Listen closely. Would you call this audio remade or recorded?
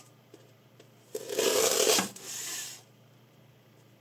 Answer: remade